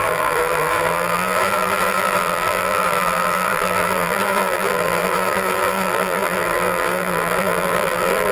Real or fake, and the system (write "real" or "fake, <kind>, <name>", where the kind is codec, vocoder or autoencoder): fake, vocoder, BigVGAN v2